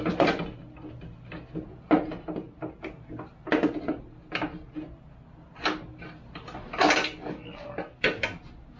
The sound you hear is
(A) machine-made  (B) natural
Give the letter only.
B